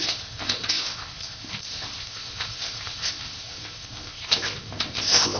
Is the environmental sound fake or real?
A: fake